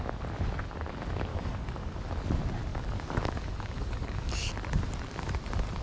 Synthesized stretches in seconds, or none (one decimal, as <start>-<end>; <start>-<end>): 1.3-2.0; 2.7-4.5